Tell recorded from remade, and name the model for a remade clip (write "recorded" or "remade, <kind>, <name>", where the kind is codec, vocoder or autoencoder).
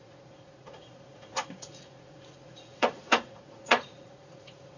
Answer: remade, vocoder, Vocos